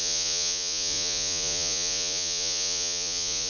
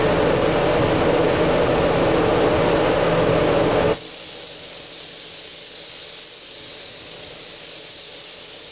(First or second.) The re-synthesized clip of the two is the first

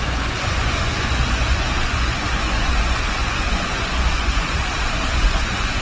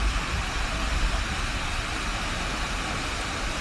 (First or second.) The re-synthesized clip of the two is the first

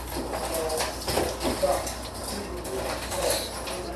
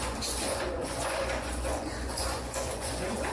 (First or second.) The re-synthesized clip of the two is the second